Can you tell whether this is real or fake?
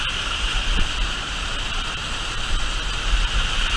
real